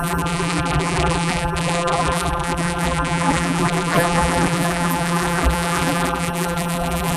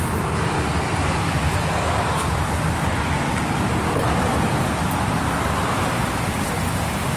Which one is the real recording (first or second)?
second